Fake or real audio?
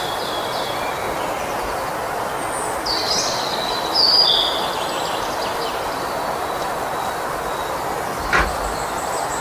real